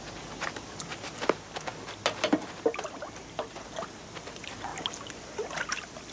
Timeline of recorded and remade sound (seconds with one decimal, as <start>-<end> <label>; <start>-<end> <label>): 0.0-6.1 recorded